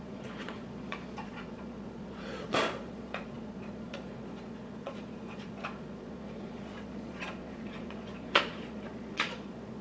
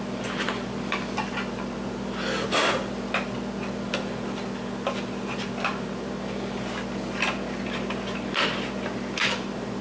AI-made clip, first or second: first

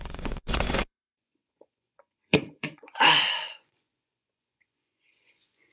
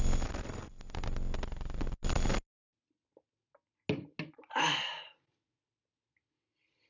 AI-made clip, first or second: first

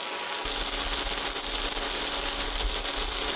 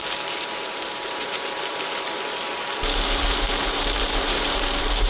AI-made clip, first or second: second